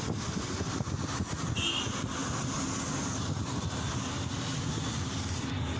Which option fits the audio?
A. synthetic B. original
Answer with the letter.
B